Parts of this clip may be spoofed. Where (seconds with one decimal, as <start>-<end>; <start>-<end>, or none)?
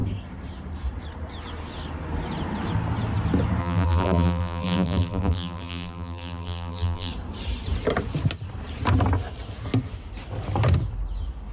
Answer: 3.6-7.1